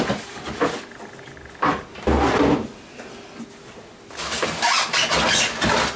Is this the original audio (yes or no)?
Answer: yes